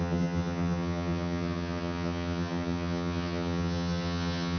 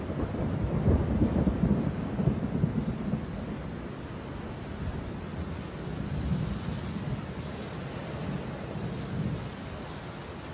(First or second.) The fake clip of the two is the first